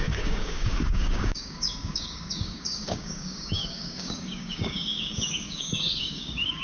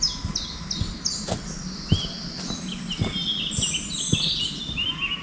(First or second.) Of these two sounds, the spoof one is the first